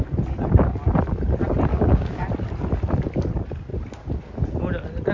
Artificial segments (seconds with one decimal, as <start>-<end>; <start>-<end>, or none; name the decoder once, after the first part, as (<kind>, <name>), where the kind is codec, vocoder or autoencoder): 1.7-2.2 (codec, DAC)